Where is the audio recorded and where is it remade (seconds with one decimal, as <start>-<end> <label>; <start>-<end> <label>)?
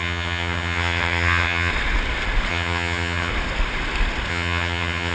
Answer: 0.0-1.7 remade; 1.7-2.5 recorded; 2.5-3.3 remade; 3.3-4.3 recorded; 4.3-5.1 remade